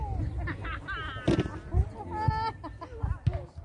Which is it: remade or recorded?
recorded